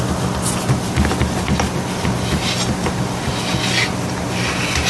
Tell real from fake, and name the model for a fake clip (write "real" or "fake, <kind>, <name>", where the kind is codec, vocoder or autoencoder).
real